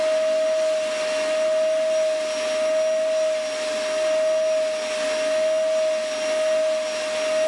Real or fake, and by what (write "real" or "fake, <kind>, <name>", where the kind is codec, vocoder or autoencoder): real